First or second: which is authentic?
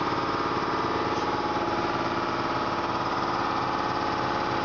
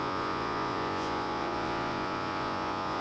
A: first